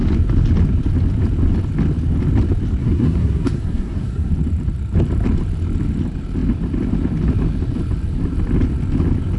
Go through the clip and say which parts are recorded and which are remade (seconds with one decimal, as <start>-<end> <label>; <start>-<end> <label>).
0.0-2.8 recorded; 2.8-4.3 remade; 4.3-9.4 recorded

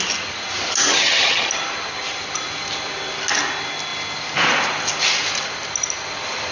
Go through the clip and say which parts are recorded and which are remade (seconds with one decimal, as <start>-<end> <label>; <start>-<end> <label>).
0.0-0.9 recorded; 0.9-1.5 remade; 1.5-6.5 recorded

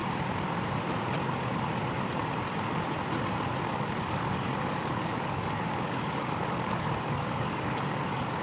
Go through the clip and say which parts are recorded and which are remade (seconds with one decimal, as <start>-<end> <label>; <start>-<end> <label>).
0.0-3.6 recorded; 3.6-8.4 remade

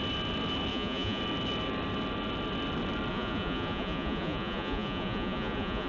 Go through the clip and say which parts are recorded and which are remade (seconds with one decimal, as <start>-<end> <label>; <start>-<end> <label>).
0.0-0.7 recorded; 0.7-1.2 remade; 1.2-3.1 recorded; 3.1-5.9 remade

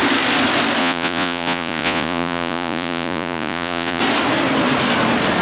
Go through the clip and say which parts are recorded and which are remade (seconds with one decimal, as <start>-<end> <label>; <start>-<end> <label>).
0.0-0.8 recorded; 0.8-4.0 remade; 4.0-5.4 recorded

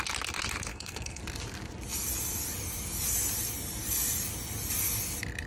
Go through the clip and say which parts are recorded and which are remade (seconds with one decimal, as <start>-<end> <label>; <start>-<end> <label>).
0.0-0.7 recorded; 0.7-1.2 remade; 1.2-5.5 recorded

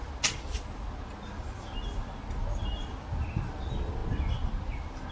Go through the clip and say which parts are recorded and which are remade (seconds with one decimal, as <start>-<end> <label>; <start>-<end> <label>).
0.0-5.1 recorded

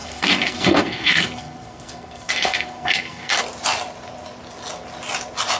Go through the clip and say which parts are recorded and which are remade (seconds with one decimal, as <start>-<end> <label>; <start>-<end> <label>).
0.0-3.4 remade; 3.4-5.6 recorded